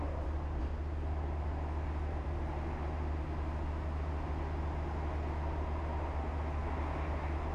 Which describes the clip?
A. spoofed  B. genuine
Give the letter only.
B